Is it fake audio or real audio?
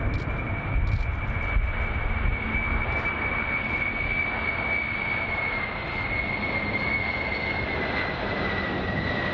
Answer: real